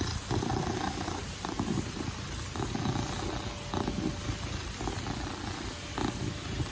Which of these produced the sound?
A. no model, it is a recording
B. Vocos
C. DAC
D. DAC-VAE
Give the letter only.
A